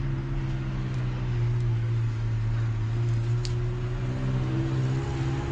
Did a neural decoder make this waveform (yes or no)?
no